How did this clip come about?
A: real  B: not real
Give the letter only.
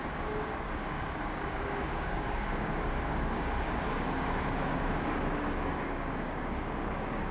B